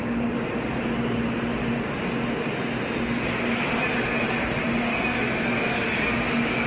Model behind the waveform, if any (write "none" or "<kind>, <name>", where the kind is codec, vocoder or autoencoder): none